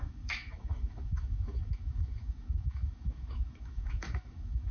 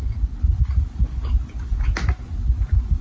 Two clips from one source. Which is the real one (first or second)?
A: second